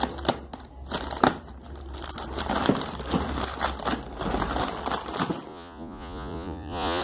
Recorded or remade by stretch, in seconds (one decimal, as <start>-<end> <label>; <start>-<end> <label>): 0.0-5.5 recorded; 5.5-7.0 remade